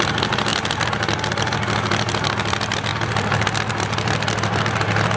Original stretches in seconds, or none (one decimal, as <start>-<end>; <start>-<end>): 0.0-5.2